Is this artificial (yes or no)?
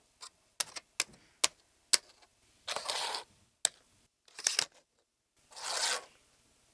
no